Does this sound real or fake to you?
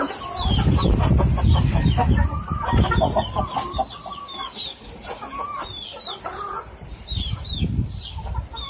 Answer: real